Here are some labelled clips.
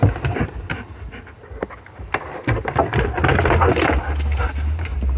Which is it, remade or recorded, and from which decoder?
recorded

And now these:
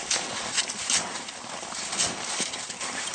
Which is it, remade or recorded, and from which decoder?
recorded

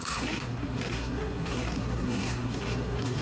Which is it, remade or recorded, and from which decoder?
remade, codec, SNAC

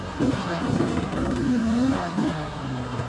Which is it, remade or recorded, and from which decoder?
remade, codec, SNAC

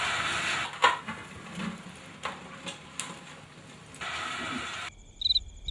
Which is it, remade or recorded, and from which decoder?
recorded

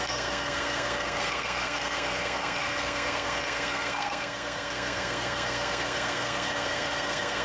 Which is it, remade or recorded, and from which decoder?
remade, codec, SNAC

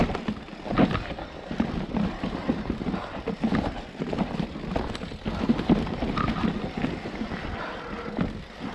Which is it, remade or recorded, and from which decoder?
recorded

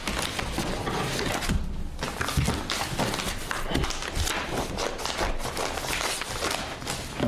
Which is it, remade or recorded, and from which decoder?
recorded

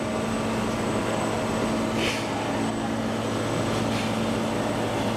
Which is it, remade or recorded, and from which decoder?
recorded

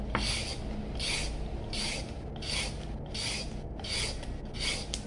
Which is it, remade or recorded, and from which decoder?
recorded